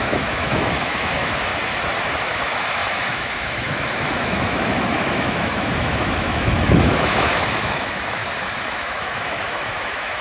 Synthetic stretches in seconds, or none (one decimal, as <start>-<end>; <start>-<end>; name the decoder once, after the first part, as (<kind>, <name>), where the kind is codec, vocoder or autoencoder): 0.0-1.5 (autoencoder, DAC-VAE); 2.2-8.2; 8.7-10.2